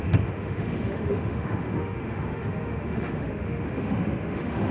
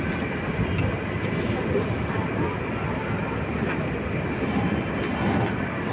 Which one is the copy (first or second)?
first